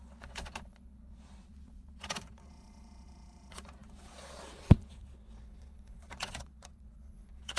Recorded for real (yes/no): no